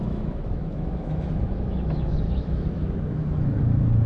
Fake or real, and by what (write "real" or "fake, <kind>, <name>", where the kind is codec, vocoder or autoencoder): fake, autoencoder, DAC-VAE